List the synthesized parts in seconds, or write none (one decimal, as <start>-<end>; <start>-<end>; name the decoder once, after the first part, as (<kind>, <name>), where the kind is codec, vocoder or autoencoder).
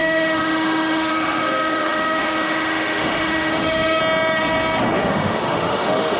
0.0-4.0 (autoencoder, DAC-VAE); 4.9-6.2